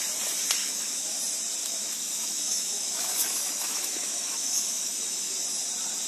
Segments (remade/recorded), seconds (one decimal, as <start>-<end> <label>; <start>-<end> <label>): 0.0-0.6 recorded; 0.6-1.2 remade; 1.2-1.6 recorded; 1.6-5.3 remade; 5.3-6.1 recorded